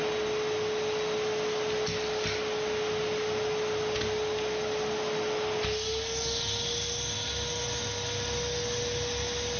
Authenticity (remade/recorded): recorded